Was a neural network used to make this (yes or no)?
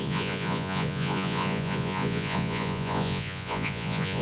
yes